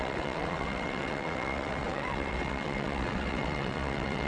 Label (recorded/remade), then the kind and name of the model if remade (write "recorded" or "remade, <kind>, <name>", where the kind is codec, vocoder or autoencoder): remade, vocoder, WaveNeXt